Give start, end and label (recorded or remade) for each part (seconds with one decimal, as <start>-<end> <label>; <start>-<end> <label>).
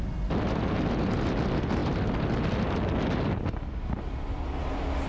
0.0-5.1 recorded